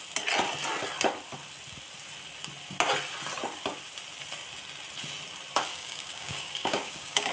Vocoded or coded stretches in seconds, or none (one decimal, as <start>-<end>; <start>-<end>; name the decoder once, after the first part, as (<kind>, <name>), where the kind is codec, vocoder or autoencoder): 5.7-7.3 (codec, DAC)